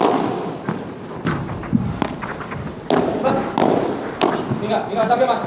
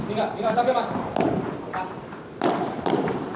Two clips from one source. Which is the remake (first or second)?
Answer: second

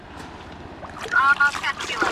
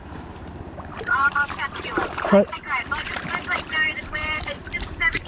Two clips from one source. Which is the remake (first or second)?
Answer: second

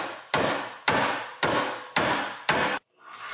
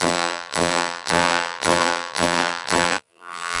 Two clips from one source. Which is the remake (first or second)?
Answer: second